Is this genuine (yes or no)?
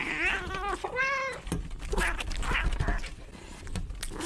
yes